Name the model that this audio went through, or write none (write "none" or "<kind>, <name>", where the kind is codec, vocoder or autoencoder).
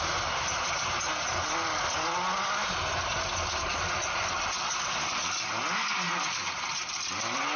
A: none